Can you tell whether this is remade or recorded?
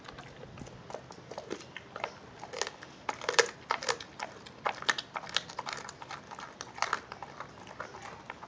recorded